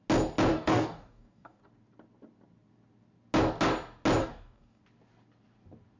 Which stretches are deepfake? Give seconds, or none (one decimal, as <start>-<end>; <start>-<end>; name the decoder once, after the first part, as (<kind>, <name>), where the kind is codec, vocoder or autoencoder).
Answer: 0.5-1.6 (codec, DAC); 4.2-4.8

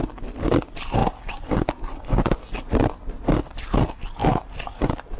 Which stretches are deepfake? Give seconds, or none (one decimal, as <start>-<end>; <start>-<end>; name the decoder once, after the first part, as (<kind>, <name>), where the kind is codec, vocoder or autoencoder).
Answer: none

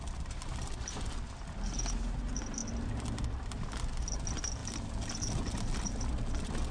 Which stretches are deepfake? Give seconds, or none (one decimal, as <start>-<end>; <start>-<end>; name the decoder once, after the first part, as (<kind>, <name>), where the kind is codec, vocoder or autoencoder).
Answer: none